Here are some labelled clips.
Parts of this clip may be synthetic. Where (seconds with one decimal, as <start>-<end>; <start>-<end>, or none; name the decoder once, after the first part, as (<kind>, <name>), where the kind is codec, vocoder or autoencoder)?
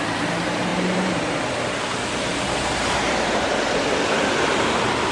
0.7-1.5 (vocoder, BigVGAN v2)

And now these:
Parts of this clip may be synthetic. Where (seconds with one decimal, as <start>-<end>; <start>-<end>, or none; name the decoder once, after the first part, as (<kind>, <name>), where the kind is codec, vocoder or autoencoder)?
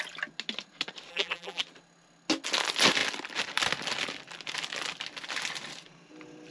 1.1-1.6 (vocoder, BigVGAN v2)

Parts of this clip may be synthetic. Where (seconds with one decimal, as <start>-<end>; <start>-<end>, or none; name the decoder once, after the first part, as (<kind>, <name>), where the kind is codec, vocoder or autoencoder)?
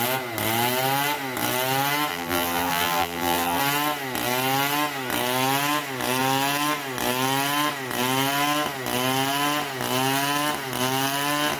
2.1-3.6 (vocoder, BigVGAN v2)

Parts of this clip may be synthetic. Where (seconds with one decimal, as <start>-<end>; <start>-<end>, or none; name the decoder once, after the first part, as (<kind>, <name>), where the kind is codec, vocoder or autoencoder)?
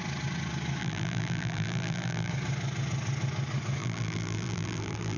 0.8-2.3 (vocoder, BigVGAN v2); 3.8-5.2